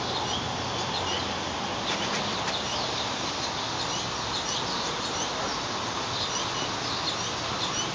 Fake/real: real